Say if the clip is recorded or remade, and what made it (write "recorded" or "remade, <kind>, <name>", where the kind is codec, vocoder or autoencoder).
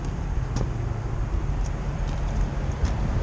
remade, vocoder, BigVGAN v2